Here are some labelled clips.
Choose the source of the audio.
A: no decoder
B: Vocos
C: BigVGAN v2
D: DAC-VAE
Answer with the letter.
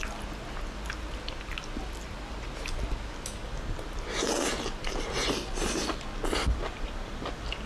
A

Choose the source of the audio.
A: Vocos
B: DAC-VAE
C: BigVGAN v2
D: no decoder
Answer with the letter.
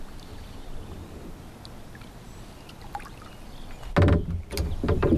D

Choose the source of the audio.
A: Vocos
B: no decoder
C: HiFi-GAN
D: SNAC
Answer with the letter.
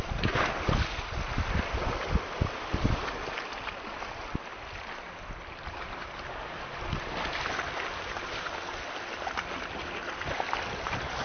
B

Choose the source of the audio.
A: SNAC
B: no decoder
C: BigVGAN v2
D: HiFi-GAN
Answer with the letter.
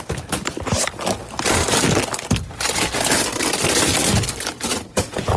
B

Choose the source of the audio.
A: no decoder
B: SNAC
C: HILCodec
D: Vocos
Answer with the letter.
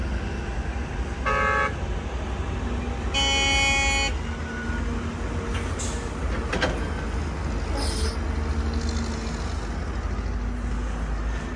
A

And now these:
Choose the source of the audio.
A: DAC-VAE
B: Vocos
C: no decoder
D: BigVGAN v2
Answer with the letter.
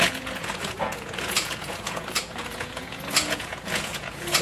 B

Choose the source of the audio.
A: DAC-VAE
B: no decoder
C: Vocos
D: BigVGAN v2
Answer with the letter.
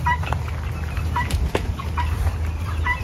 B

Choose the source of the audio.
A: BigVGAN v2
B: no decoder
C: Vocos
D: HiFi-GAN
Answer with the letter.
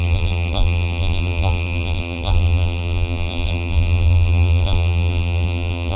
A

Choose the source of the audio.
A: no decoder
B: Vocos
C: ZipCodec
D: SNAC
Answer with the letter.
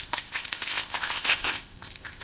C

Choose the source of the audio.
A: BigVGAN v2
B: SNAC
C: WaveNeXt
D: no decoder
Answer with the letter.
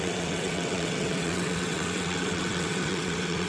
C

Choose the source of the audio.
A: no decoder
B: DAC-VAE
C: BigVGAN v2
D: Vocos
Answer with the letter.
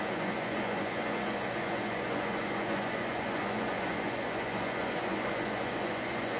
D